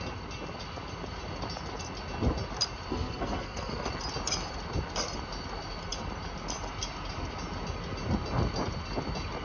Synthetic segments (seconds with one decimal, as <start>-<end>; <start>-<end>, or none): 2.9-3.9